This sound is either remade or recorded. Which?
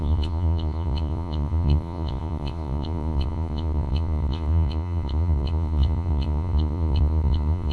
remade